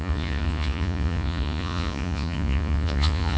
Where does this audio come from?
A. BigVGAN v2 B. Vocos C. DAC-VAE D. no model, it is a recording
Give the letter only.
B